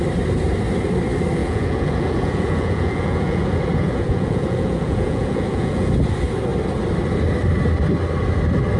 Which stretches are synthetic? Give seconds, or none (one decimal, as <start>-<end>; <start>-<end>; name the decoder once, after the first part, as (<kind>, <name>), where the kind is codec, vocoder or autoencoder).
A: 1.4-5.9 (vocoder, Vocos)